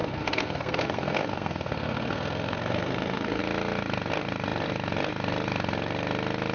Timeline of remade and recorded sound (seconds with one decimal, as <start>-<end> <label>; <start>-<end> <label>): 0.0-3.4 remade; 3.4-6.5 recorded